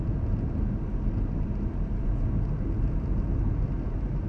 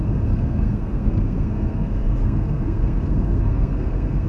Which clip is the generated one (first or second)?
second